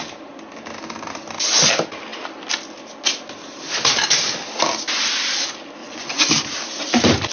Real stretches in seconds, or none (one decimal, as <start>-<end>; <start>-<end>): 0.0-5.8; 6.3-7.3